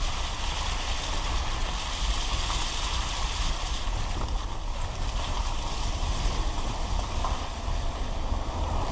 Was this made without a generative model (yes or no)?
yes